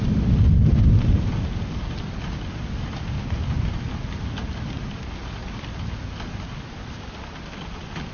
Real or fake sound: real